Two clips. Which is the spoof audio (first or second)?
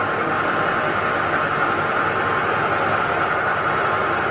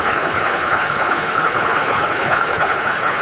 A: second